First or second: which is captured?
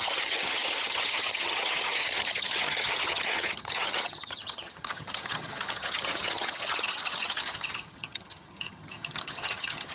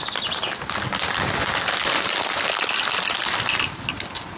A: second